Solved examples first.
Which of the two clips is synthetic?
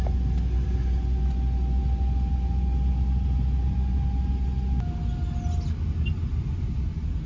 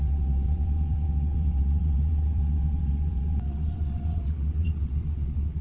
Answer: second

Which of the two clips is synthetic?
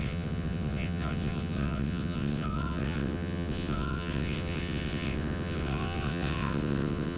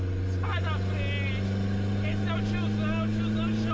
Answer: first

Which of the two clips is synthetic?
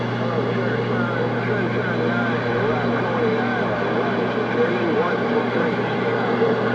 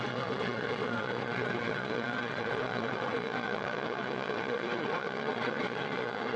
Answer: second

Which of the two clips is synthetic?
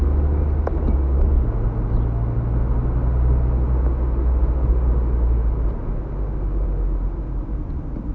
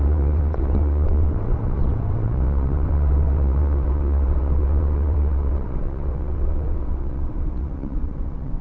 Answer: second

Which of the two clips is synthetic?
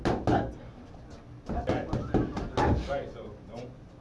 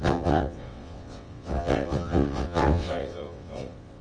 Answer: second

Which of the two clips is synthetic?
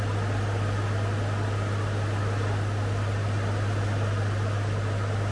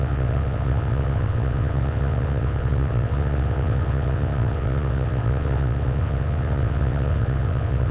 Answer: second